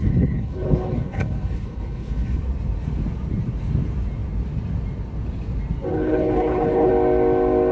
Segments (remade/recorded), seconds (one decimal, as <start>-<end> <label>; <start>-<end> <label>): 0.0-2.4 remade; 2.4-5.9 recorded; 5.9-6.9 remade; 6.9-7.7 recorded